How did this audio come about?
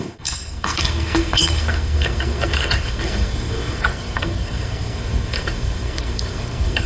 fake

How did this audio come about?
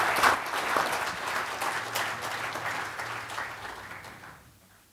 real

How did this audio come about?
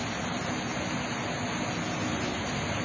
real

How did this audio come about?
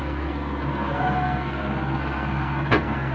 fake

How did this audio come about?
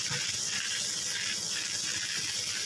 real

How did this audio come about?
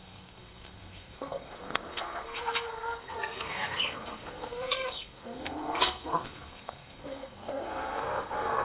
fake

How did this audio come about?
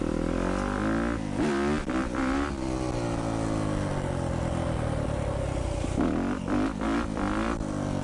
real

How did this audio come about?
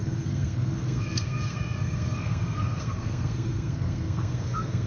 fake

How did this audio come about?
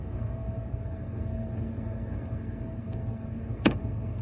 fake